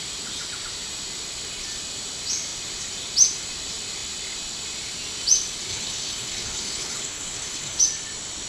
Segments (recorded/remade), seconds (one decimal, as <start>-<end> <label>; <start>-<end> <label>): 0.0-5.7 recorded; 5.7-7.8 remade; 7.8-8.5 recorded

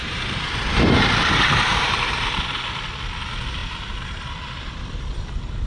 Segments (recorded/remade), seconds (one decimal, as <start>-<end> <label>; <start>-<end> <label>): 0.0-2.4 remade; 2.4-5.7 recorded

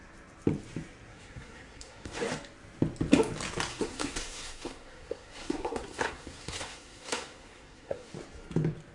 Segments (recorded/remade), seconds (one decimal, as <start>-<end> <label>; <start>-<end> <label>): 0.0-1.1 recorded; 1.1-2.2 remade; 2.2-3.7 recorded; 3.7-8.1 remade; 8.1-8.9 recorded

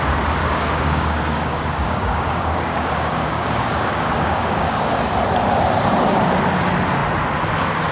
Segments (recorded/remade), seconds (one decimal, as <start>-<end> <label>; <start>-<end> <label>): 0.0-0.4 recorded; 0.4-4.9 remade; 4.9-7.9 recorded

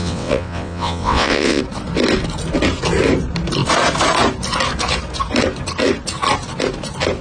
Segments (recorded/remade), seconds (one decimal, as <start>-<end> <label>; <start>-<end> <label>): 0.0-1.6 remade; 1.6-7.2 recorded

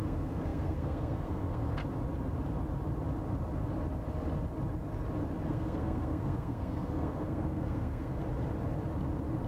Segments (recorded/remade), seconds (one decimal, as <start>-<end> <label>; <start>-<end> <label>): 0.0-1.8 remade; 1.8-5.5 recorded; 5.5-8.2 remade; 8.2-9.5 recorded